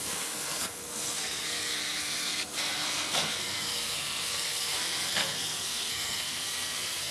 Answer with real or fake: fake